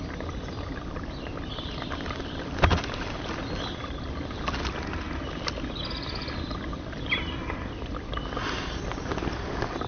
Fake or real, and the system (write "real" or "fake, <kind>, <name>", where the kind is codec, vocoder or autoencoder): real